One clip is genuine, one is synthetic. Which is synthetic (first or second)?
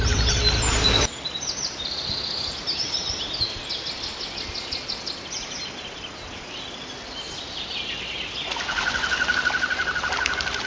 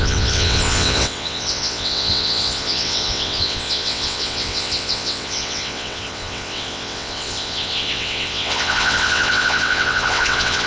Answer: second